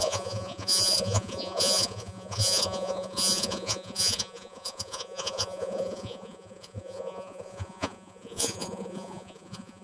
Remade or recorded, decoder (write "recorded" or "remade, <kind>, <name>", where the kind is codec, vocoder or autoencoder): remade, vocoder, Vocos